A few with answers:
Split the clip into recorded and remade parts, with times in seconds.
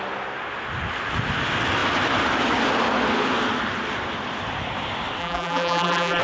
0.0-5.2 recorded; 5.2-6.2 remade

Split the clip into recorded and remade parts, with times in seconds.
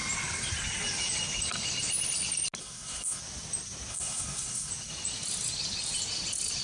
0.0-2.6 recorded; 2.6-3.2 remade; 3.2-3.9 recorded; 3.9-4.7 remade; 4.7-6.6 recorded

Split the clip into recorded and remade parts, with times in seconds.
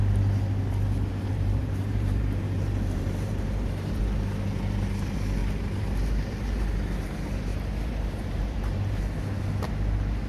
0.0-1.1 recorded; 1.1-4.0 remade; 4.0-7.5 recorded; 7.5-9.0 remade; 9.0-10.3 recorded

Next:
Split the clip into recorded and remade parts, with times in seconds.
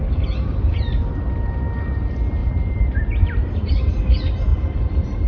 0.0-2.4 recorded; 2.4-3.8 remade; 3.8-4.5 recorded; 4.5-5.3 remade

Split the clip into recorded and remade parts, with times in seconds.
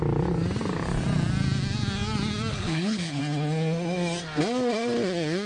0.0-2.5 recorded; 2.5-3.2 remade; 3.2-5.5 recorded